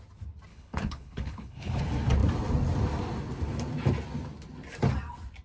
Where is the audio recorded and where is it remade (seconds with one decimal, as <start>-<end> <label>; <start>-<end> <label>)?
0.0-0.5 recorded; 0.5-1.8 remade; 1.8-5.4 recorded